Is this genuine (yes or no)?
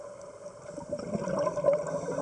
yes